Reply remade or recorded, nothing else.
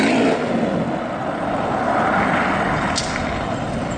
recorded